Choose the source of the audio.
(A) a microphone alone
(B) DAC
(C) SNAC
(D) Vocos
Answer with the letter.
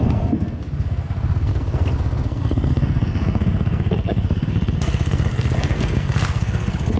C